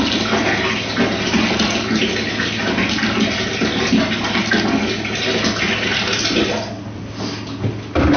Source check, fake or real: real